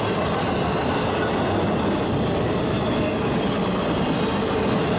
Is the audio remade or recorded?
recorded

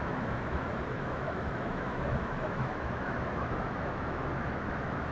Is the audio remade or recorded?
remade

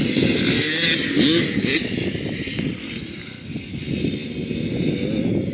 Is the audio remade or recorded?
recorded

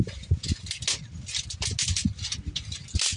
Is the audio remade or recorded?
recorded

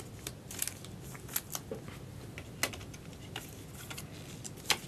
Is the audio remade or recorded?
recorded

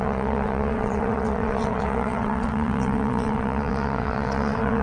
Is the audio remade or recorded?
remade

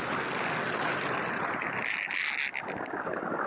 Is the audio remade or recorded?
recorded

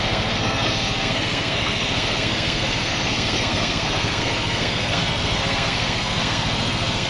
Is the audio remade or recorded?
remade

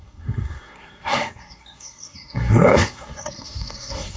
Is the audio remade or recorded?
remade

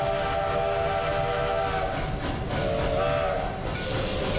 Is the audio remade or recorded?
recorded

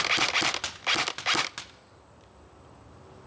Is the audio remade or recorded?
recorded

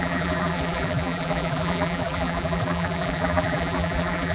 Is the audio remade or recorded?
remade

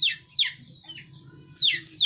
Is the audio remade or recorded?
recorded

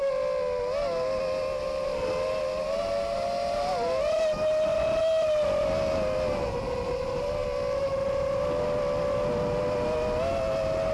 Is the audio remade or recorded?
recorded